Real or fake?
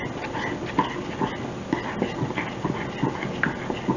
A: real